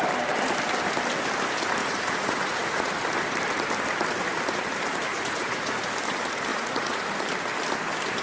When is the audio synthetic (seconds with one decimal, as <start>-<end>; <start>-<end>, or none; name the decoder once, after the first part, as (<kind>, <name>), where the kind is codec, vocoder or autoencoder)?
1.8-3.0 (vocoder, Vocos); 5.1-5.9; 6.5-7.0